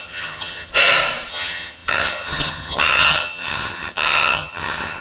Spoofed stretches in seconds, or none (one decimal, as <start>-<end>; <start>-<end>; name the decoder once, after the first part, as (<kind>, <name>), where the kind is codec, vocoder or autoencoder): 0.0-0.7 (vocoder, HiFi-GAN); 1.3-5.0

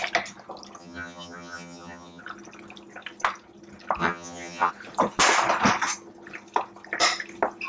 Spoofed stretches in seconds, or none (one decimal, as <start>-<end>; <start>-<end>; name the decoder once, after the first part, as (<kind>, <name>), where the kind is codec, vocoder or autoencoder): 0.8-2.2 (vocoder, HiFi-GAN); 4.0-4.7

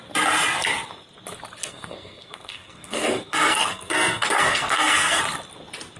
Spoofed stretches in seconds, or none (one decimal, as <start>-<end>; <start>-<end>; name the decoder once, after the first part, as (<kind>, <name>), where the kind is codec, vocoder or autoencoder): 1.6-5.2 (codec, SNAC)

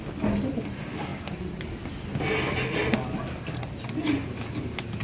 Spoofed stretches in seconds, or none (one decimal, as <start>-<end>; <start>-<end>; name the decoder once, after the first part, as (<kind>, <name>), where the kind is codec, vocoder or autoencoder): none

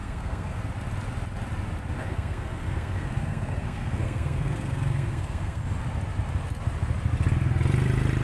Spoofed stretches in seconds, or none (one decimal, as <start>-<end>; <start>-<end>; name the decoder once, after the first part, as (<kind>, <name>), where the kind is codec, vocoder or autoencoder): 0.0-0.6 (codec, SNAC); 2.0-5.6

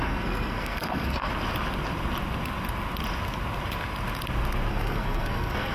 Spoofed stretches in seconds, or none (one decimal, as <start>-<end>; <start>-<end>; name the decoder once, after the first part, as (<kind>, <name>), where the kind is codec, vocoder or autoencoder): 0.0-1.3 (codec, SNAC); 4.7-5.7

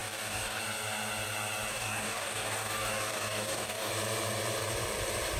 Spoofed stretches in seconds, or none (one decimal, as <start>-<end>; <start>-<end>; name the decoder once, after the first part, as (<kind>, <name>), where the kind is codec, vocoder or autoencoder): 0.0-0.6 (codec, DAC); 1.7-3.9